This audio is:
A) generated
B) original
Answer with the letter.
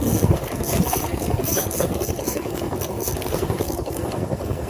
A